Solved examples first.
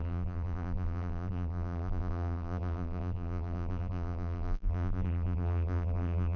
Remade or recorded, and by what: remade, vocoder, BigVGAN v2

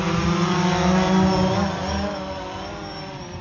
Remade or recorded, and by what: recorded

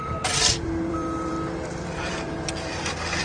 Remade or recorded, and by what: remade, vocoder, BigVGAN v2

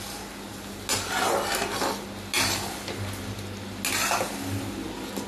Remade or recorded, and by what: recorded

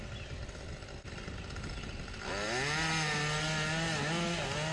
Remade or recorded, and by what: recorded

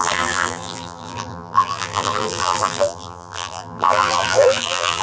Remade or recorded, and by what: remade, vocoder, BigVGAN v2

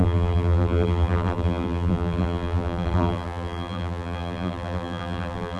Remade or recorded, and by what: remade, vocoder, BigVGAN v2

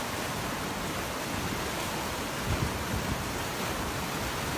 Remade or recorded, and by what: recorded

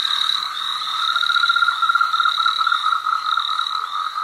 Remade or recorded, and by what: recorded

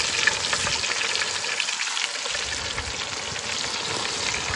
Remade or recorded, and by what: recorded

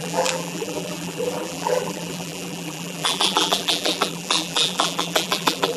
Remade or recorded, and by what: remade, vocoder, BigVGAN v2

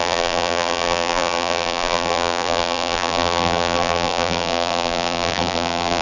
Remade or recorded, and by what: remade, vocoder, BigVGAN v2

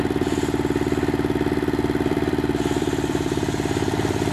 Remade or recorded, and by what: remade, vocoder, BigVGAN v2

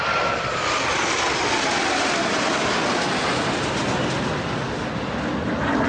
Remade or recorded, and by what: recorded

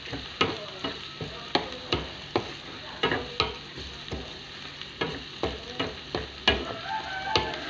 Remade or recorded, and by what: recorded